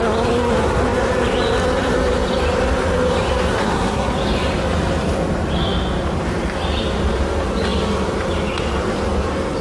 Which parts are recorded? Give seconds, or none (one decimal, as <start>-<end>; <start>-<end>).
0.0-3.6; 4.1-9.6